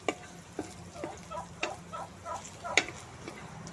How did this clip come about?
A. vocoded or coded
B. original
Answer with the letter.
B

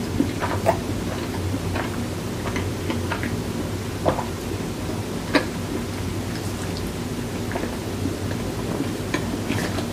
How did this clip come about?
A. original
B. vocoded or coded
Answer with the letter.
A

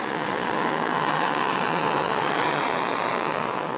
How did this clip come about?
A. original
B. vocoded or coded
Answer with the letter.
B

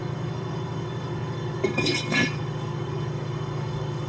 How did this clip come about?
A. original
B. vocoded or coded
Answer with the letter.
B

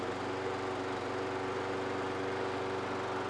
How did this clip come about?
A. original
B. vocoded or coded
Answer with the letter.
A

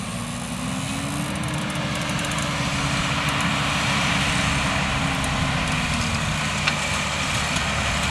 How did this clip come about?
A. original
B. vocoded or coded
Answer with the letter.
A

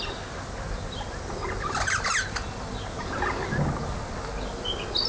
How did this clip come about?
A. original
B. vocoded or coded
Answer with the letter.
A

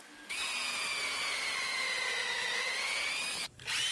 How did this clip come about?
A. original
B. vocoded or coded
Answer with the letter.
A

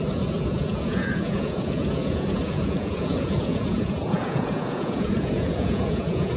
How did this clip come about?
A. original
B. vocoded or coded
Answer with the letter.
B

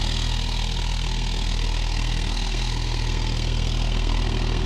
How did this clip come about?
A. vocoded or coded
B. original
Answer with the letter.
A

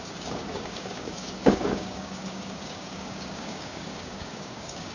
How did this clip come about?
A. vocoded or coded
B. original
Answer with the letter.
A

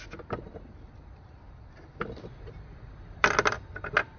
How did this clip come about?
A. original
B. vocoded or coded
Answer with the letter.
A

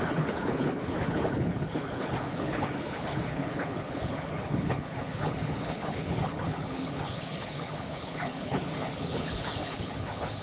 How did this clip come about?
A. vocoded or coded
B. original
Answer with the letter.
A